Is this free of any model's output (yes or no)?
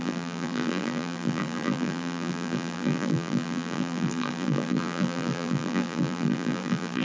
no